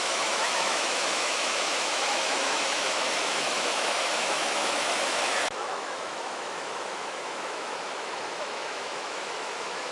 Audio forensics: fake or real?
fake